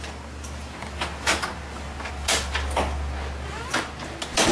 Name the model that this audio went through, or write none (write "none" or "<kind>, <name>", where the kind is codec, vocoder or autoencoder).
none